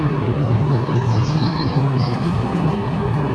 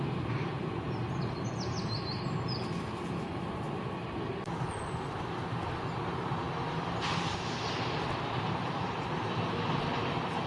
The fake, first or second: first